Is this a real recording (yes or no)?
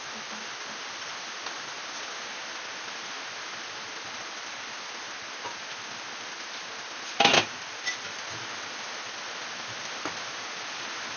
yes